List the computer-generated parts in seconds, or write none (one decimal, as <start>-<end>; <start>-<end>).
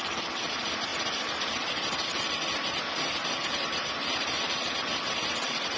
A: none